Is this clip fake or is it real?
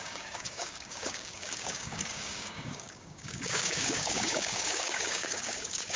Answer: fake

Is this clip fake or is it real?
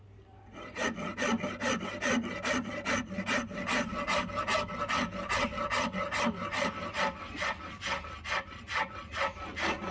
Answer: real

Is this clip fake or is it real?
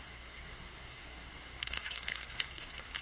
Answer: fake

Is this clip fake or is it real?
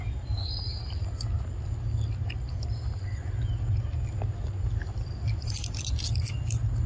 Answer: real